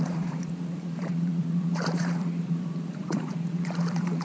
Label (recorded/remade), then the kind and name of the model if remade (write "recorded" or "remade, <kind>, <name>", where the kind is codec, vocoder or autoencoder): remade, vocoder, Vocos